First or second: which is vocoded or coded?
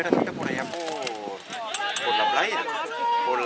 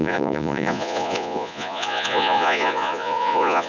second